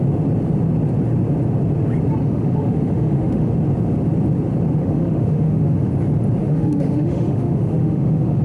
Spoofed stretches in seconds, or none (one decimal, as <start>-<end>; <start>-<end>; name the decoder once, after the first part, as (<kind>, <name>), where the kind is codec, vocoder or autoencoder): 2.2-3.5 (autoencoder, DAC-VAE); 4.8-5.9; 6.4-8.4